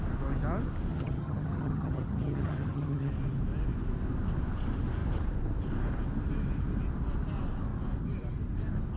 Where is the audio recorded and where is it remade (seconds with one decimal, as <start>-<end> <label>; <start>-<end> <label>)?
0.0-0.9 recorded; 0.9-3.1 remade; 3.1-9.0 recorded